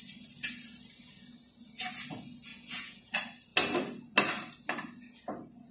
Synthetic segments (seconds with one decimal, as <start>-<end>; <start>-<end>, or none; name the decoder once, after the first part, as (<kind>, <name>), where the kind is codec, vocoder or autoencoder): 2.5-3.1 (vocoder, Vocos)